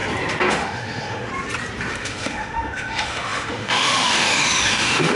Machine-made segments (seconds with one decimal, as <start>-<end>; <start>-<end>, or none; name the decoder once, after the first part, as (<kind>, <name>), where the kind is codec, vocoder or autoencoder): 0.5-1.3 (autoencoder, DAC-VAE); 1.9-5.2